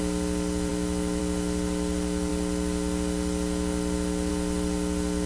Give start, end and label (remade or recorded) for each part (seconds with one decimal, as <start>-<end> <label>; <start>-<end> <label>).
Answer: 0.0-5.3 recorded